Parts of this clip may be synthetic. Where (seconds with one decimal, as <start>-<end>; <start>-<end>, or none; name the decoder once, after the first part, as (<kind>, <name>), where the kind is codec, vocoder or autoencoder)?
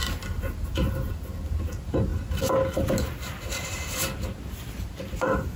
none